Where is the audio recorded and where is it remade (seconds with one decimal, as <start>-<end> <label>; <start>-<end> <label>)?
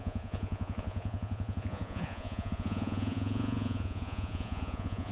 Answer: 0.0-5.1 remade